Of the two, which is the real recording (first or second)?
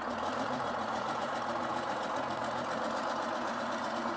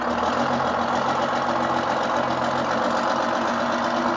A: second